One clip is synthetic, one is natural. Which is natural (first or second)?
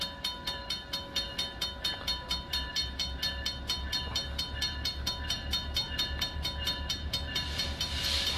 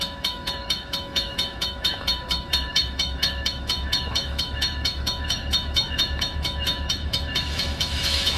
first